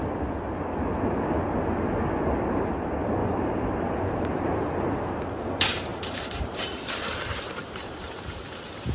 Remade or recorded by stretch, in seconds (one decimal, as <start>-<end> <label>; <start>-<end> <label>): 0.0-3.2 recorded; 3.2-4.5 remade; 4.5-5.9 recorded; 5.9-8.5 remade; 8.5-8.9 recorded